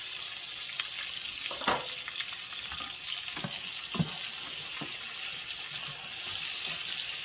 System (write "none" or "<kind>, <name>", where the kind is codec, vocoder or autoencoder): none